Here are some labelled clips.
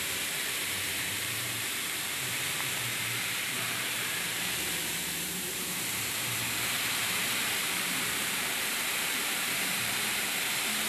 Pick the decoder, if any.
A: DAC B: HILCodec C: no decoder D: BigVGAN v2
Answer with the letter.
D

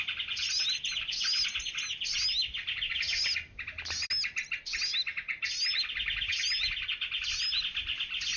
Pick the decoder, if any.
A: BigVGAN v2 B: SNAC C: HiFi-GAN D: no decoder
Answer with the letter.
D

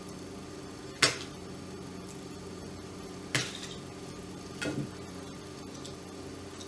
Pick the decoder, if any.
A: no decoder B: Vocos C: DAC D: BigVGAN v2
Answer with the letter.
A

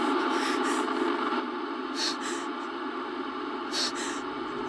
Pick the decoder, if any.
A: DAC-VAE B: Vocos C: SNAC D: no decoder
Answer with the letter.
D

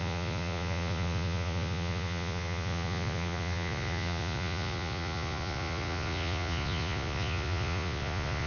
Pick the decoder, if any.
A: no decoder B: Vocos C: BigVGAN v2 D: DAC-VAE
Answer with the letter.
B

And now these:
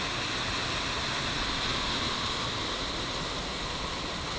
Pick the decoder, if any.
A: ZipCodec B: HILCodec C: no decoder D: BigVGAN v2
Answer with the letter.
C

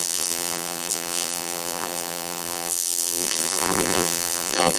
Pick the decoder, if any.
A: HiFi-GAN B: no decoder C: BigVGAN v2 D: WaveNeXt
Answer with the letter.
C